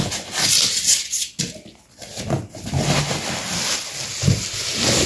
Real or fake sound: real